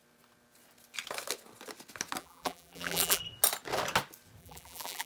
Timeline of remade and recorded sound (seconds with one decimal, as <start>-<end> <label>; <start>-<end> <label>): 0.0-2.2 recorded; 2.2-3.2 remade; 3.2-4.4 recorded; 4.4-5.1 remade